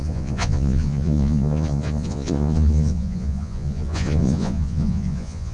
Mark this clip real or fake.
fake